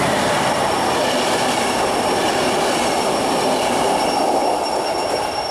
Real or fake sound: real